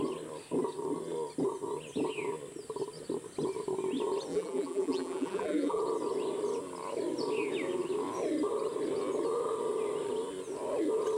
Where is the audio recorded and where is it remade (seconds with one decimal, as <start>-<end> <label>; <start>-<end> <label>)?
0.0-4.3 recorded; 4.3-5.8 remade; 5.8-11.2 recorded